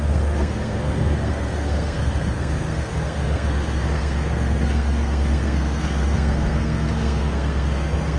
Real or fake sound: fake